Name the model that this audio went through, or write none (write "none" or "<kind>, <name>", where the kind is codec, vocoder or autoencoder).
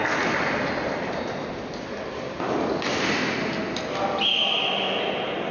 none